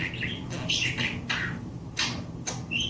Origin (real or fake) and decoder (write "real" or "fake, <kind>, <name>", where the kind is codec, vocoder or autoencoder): real